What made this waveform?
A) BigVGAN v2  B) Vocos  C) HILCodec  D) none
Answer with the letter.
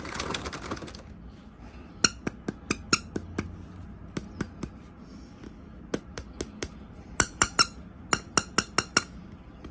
D